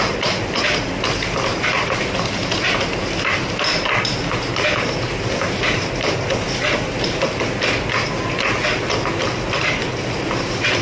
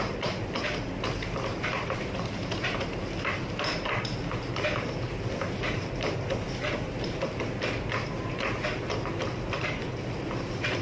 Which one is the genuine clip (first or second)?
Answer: first